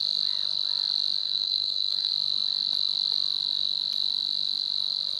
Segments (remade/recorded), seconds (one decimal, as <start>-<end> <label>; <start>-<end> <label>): 0.0-1.2 recorded; 1.2-2.1 remade; 2.1-5.2 recorded